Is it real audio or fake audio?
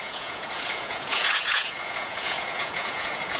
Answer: fake